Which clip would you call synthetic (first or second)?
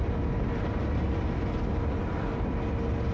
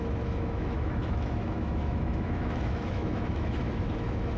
second